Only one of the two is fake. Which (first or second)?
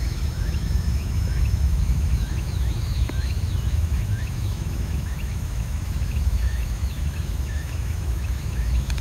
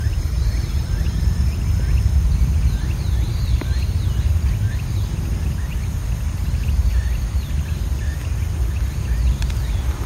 first